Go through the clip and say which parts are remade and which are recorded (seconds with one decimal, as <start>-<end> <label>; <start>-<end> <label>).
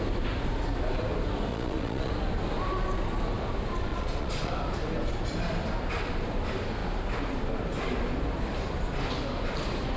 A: 0.0-1.5 recorded; 1.5-2.1 remade; 2.1-3.9 recorded; 3.9-4.5 remade; 4.5-10.0 recorded